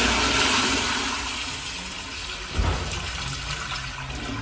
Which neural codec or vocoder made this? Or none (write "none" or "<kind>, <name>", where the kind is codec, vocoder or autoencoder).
none